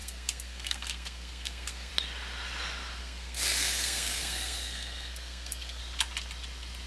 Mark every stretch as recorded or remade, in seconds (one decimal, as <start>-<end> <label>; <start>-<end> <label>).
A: 0.0-1.9 remade; 1.9-3.0 recorded; 3.0-5.8 remade; 5.8-6.9 recorded

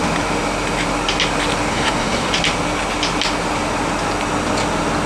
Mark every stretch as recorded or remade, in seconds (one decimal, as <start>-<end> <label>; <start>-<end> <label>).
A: 0.0-1.7 recorded; 1.7-2.3 remade; 2.3-5.1 recorded

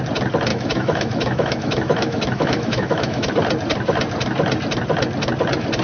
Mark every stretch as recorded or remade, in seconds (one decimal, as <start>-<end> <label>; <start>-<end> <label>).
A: 0.0-0.5 recorded; 0.5-3.3 remade; 3.3-5.8 recorded

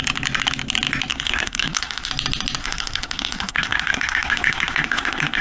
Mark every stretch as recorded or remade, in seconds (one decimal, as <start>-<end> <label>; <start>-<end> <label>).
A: 0.0-1.1 recorded; 1.1-2.1 remade; 2.1-2.6 recorded; 2.6-5.4 remade

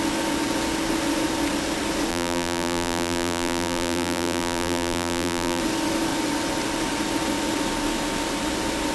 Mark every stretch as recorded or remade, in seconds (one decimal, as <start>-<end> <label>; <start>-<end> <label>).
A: 0.0-2.1 recorded; 2.1-5.6 remade; 5.6-8.9 recorded

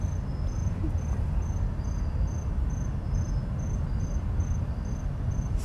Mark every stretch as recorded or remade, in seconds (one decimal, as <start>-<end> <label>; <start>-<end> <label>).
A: 0.0-5.6 recorded

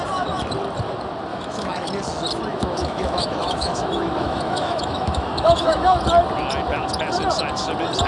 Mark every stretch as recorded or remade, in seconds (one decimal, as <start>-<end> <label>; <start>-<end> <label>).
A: 0.0-1.3 recorded; 1.3-1.9 remade; 1.9-2.5 recorded; 2.5-6.0 remade; 6.0-8.1 recorded

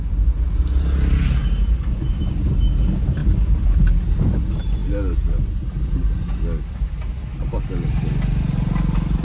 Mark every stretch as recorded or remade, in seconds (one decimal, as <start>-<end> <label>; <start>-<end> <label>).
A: 0.0-1.4 recorded; 1.4-2.3 remade; 2.3-9.2 recorded